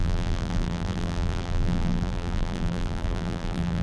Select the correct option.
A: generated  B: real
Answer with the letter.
A